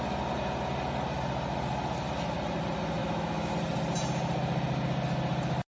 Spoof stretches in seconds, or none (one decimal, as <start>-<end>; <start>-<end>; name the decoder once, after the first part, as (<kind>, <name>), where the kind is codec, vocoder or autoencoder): 3.0-3.5 (autoencoder, DAC-VAE)

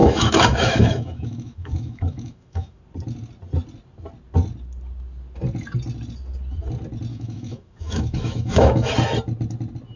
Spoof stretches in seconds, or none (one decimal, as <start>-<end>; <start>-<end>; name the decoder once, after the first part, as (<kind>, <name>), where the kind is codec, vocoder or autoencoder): 0.0-2.8 (autoencoder, DAC-VAE); 7.1-8.9